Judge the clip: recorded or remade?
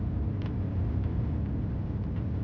remade